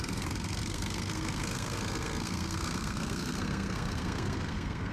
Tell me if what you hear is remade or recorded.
remade